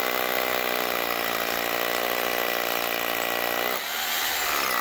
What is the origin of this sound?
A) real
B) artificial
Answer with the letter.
A